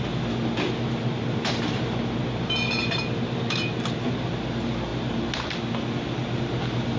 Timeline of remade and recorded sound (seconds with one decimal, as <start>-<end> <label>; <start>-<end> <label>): 0.0-7.0 recorded